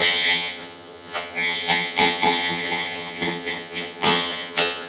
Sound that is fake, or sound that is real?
fake